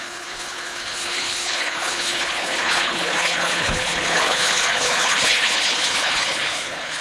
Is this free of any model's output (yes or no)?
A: no